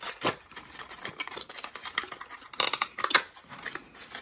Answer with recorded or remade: recorded